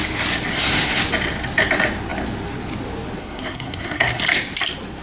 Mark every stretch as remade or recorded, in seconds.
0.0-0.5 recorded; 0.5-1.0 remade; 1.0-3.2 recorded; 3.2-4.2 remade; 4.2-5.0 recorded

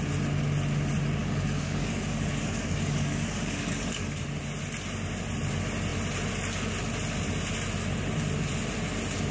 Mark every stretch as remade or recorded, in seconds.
0.0-1.2 recorded; 1.2-4.2 remade; 4.2-9.3 recorded

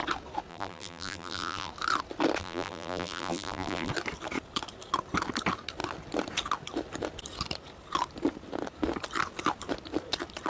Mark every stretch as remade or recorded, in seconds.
0.0-0.5 recorded; 0.5-1.7 remade; 1.7-2.4 recorded; 2.4-3.9 remade; 3.9-10.5 recorded

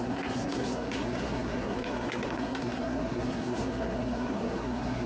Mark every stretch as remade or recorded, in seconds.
0.0-5.1 remade

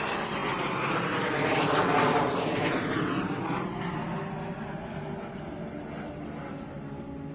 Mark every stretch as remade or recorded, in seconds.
0.0-7.3 recorded

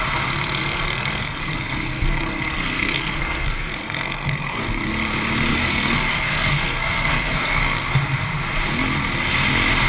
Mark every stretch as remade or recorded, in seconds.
0.0-0.6 recorded; 0.6-4.9 remade; 4.9-5.5 recorded; 5.5-7.6 remade; 7.6-9.9 recorded